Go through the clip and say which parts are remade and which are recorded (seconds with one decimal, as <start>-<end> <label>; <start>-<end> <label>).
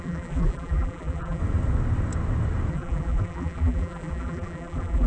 0.0-1.4 remade; 1.4-2.7 recorded; 2.7-5.1 remade